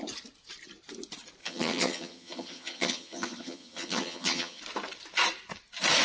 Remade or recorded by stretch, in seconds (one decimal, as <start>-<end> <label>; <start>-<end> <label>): 0.0-1.4 recorded; 1.4-4.6 remade; 4.6-6.0 recorded

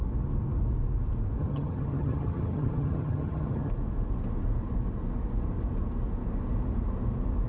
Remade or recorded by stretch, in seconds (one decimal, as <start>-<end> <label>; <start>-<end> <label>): 0.0-1.4 recorded; 1.4-3.7 remade; 3.7-7.5 recorded

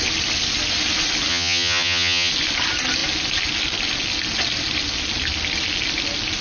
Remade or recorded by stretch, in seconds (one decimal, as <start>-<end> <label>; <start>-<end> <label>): 0.0-1.3 recorded; 1.3-2.3 remade; 2.3-6.4 recorded

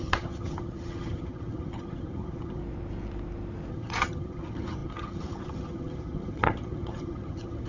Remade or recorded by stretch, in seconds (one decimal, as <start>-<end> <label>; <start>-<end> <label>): 0.0-2.6 remade; 2.6-3.7 recorded; 3.7-7.7 remade

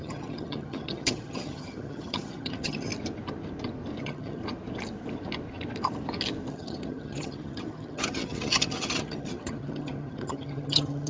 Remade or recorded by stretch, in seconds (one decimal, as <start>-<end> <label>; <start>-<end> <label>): 0.0-2.9 remade; 2.9-4.0 recorded; 4.0-4.4 remade; 4.4-6.5 recorded; 6.5-11.1 remade

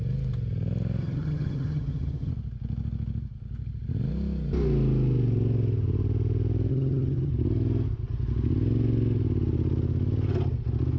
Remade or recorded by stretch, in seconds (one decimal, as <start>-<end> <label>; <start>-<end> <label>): 0.0-1.0 recorded; 1.0-2.3 remade; 2.3-6.7 recorded; 6.7-7.3 remade; 7.3-11.0 recorded